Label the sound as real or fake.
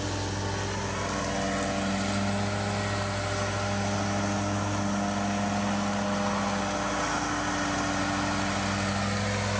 real